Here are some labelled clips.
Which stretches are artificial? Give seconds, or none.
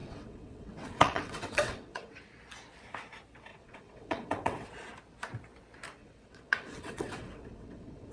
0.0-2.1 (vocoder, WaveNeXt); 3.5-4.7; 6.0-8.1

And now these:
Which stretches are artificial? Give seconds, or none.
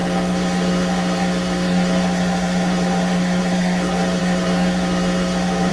0.0-5.7 (codec, SNAC)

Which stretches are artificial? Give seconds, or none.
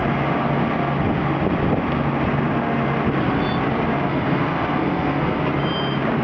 4.1-5.4 (codec, SNAC)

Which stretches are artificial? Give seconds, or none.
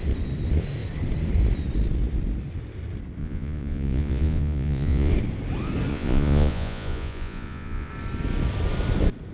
3.2-5.1 (vocoder, Vocos); 5.9-7.9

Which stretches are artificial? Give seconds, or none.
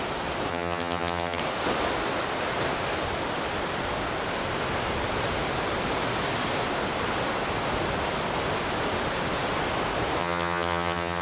0.5-1.4 (vocoder, HiFi-GAN); 10.2-11.2